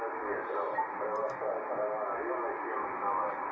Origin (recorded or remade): recorded